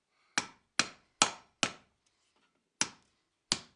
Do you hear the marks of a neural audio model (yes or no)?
no